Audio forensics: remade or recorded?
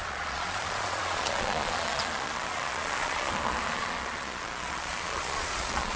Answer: remade